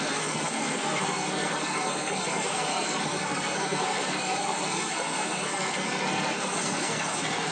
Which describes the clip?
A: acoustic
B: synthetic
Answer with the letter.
B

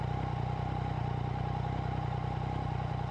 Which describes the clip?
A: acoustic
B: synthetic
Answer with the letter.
A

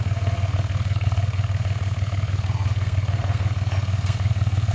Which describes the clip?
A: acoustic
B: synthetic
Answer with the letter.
B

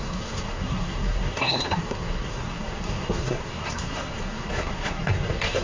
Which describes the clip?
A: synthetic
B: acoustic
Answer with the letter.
A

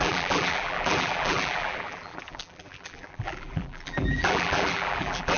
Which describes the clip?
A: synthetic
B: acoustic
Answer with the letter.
A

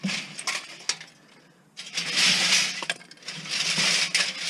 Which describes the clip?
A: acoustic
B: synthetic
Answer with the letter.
A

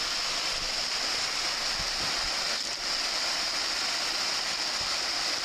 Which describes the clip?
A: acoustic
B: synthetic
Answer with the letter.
A